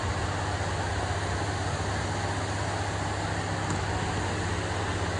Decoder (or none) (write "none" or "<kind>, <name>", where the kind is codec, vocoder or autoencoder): none